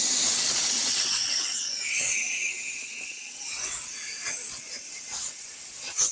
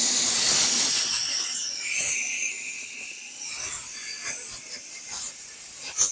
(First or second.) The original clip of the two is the second